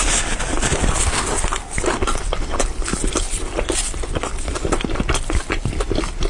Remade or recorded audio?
remade